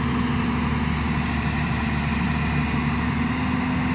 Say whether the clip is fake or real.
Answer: real